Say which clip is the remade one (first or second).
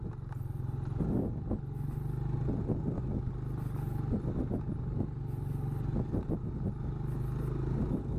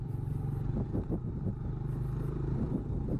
second